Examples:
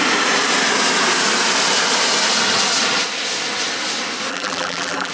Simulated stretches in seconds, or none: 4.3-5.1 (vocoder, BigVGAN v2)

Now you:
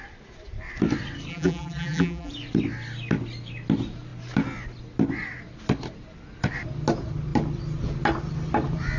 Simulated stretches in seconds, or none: 1.3-2.3 (vocoder, BigVGAN v2)

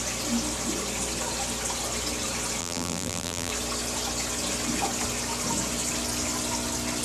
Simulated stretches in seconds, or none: 2.6-3.5 (vocoder, BigVGAN v2)

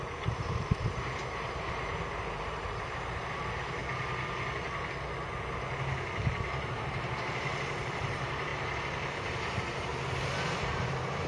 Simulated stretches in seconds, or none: 0.0-3.8 (vocoder, BigVGAN v2); 6.8-9.9; 10.6-11.3

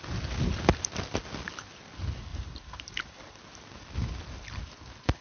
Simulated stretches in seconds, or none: 2.3-3.4 (vocoder, BigVGAN v2)

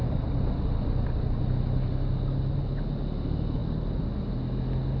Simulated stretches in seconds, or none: none